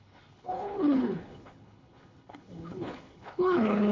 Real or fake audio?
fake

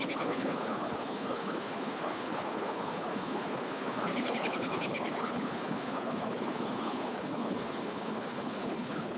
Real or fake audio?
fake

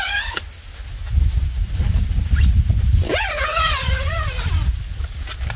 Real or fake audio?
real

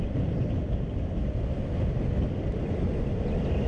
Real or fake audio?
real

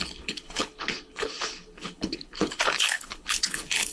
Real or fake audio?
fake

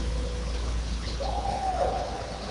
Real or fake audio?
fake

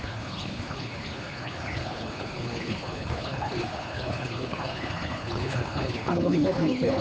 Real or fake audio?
fake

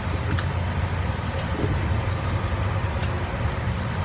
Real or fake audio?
real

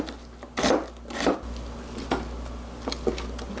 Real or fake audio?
real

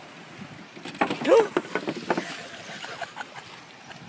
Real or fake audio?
real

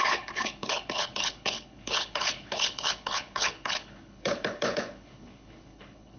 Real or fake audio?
fake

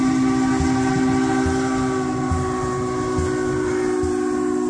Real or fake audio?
real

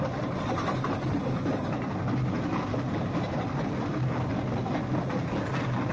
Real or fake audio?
real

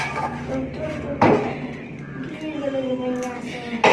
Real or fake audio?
real